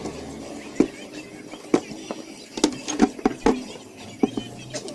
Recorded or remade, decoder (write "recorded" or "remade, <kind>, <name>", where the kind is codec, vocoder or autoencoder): recorded